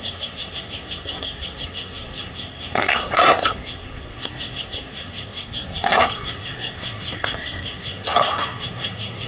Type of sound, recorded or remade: remade